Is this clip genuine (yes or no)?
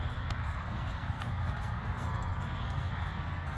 no